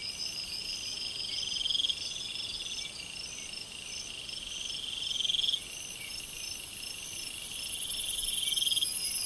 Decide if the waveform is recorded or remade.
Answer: recorded